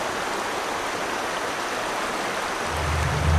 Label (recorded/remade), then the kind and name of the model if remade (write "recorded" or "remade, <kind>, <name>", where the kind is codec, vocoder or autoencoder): recorded